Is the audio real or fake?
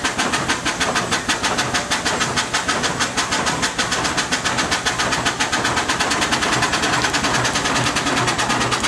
real